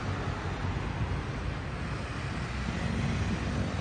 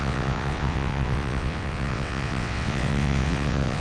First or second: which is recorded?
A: first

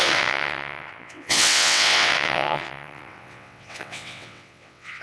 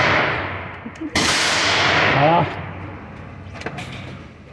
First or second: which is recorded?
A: second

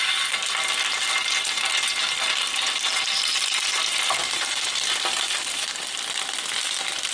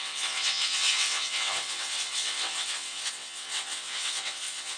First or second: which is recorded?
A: first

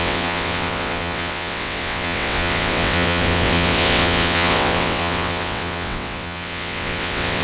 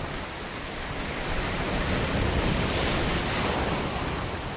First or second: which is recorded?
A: second